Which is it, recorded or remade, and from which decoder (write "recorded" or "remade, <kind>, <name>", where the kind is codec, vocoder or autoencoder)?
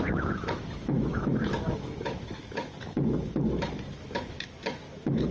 remade, autoencoder, DAC-VAE